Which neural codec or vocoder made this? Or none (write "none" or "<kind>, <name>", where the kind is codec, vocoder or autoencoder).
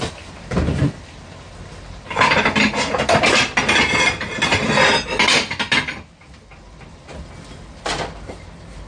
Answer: none